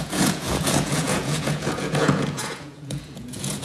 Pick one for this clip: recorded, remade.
remade